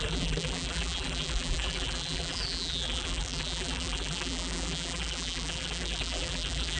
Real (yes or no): no